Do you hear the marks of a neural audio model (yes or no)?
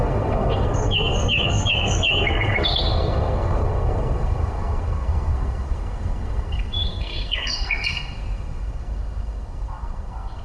yes